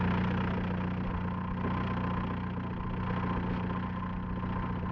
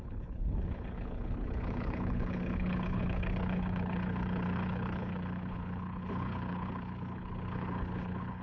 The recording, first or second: first